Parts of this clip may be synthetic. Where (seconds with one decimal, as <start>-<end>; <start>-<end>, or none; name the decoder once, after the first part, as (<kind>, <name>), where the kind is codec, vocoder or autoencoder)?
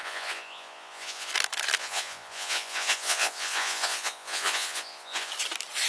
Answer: 0.0-1.3 (vocoder, Vocos); 1.8-5.3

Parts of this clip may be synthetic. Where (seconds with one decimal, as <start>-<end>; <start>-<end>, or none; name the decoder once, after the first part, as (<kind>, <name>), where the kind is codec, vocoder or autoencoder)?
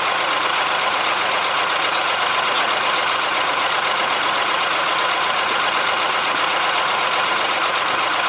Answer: 0.0-8.3 (vocoder, Vocos)